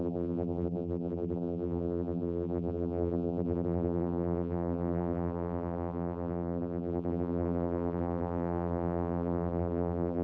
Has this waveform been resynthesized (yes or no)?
yes